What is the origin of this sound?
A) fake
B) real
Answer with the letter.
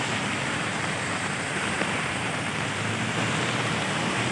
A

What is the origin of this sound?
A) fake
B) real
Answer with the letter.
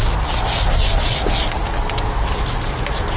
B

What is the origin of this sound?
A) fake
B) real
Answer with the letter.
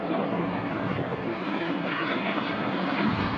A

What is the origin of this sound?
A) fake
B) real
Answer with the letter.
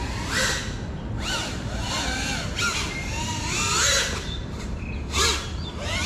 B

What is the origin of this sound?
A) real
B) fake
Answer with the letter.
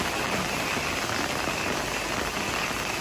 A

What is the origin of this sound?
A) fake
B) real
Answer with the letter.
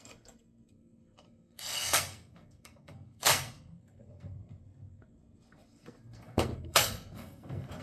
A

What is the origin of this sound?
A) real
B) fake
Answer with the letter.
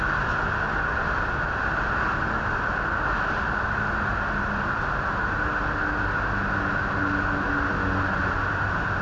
A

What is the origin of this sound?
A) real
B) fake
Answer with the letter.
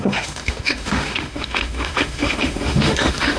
B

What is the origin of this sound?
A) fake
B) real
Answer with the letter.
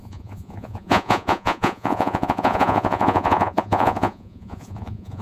A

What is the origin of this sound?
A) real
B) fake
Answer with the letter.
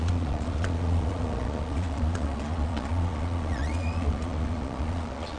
B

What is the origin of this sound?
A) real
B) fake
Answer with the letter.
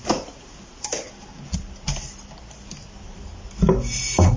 A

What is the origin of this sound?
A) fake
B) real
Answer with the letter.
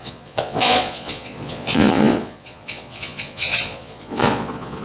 A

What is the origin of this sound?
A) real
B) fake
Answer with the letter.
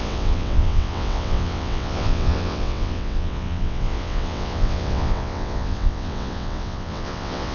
B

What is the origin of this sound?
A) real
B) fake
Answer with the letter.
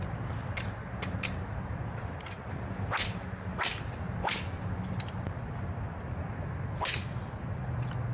A